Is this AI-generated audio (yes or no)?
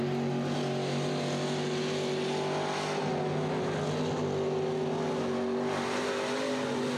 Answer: no